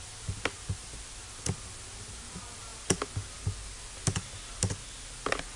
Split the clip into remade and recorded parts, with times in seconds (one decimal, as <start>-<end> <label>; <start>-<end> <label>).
0.0-5.6 recorded